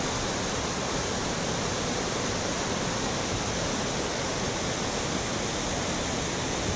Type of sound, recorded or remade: recorded